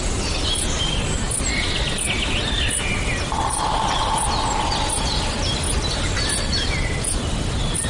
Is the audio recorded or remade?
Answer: recorded